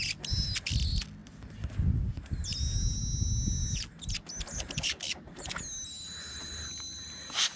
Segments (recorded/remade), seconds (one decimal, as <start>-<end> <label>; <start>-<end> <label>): 0.0-7.6 recorded